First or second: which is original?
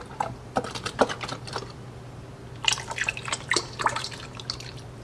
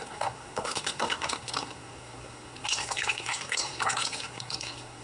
first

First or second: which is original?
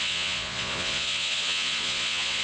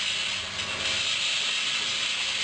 second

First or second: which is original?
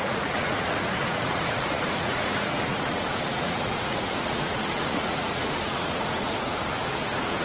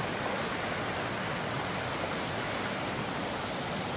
second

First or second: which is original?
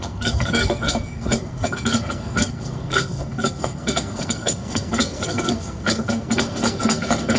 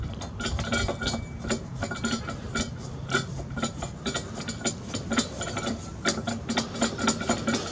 second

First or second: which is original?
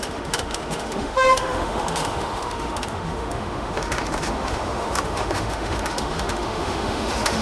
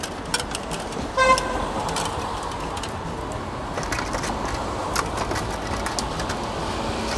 second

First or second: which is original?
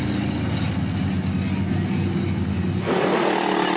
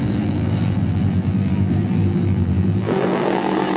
first